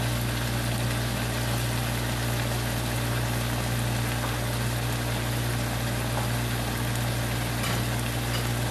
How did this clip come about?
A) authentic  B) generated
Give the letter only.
A